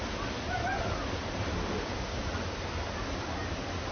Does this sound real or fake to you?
real